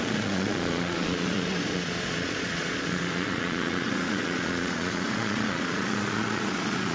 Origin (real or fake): fake